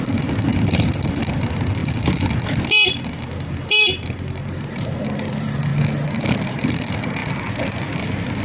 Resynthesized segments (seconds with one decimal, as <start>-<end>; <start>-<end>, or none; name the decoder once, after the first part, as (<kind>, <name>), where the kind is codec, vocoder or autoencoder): 0.0-5.7 (vocoder, BigVGAN v2); 6.5-7.2